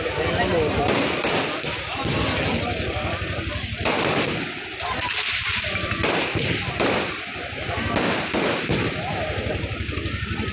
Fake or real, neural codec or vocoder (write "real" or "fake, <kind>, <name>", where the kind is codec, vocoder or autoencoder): real